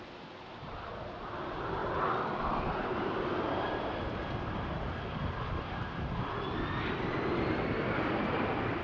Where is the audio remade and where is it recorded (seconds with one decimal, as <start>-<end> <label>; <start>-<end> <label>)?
0.0-8.8 recorded